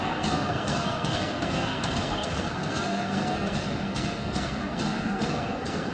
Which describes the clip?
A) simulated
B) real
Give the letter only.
A